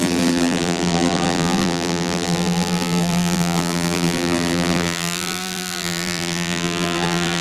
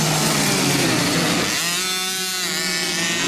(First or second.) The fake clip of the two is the first